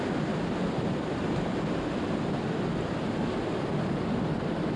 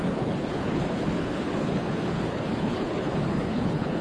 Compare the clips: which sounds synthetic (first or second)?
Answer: second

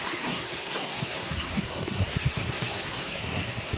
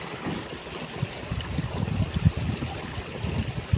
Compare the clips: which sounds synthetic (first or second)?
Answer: first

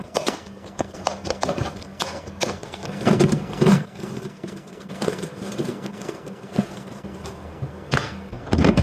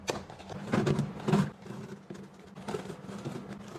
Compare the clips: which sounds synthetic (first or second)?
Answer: first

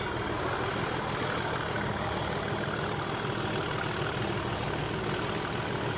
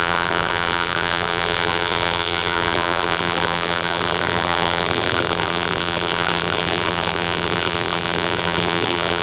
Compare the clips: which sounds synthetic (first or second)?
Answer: second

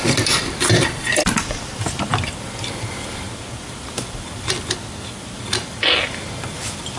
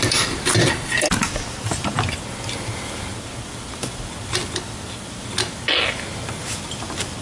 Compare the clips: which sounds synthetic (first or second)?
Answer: first